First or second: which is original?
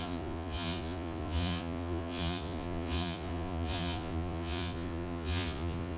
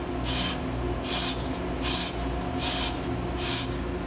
second